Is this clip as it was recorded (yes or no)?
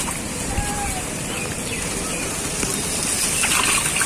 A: yes